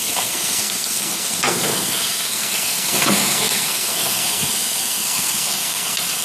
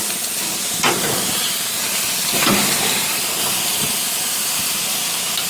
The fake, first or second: first